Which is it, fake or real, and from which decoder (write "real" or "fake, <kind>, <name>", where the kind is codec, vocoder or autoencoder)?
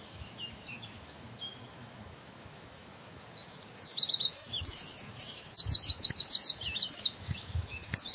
fake, autoencoder, DAC-VAE